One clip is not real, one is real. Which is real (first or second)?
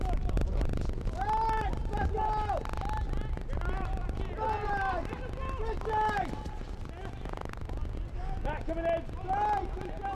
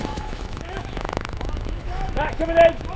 first